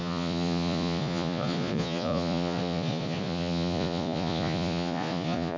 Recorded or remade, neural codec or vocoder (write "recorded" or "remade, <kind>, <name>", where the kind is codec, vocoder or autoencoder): remade, vocoder, Vocos